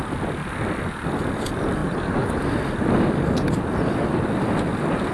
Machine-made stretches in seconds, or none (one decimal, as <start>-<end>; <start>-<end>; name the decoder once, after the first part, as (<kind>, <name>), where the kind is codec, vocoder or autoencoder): none

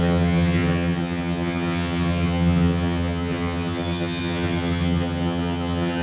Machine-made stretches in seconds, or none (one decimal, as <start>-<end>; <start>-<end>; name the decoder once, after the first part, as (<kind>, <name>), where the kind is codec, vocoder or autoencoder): 0.0-6.0 (vocoder, HiFi-GAN)

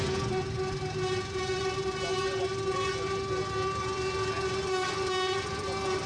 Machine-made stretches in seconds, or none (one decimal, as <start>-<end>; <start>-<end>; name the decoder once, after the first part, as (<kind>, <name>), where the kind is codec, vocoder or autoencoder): none

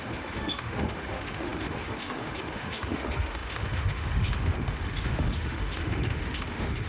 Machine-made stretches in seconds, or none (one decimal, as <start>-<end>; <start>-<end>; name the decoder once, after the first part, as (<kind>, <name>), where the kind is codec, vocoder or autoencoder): 0.0-6.9 (autoencoder, DAC-VAE)

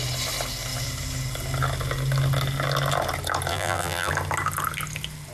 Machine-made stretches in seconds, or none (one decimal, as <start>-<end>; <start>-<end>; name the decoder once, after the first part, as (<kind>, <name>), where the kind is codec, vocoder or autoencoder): 3.5-4.1 (vocoder, BigVGAN v2)

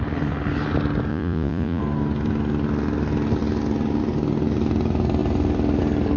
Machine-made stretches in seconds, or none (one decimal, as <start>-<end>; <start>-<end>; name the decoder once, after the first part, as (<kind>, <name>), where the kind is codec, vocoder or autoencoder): 1.1-1.8 (vocoder, Vocos)

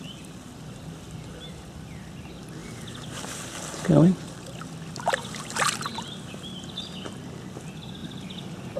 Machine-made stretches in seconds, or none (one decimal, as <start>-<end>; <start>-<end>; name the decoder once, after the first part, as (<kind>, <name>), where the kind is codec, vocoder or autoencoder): none

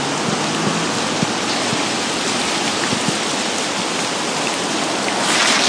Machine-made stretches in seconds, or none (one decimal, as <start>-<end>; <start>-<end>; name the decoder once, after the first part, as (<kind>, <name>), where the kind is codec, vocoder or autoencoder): none